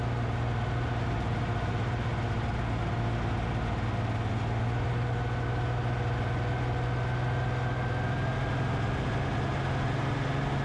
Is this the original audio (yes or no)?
yes